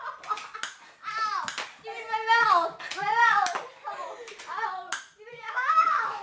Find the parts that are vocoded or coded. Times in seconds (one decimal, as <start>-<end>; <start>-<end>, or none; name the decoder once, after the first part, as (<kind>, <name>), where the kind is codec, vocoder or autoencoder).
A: 5.3-6.2 (autoencoder, DAC-VAE)